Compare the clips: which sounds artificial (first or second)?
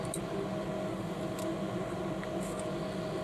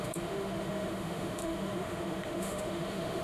second